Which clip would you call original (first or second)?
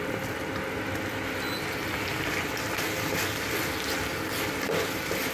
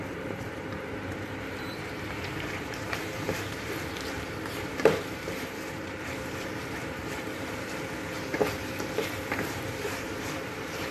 first